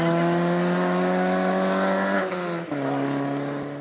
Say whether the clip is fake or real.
real